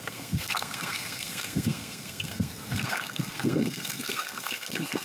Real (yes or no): no